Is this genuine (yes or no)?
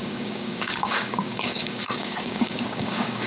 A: no